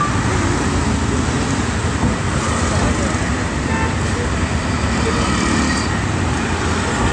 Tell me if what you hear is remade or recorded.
recorded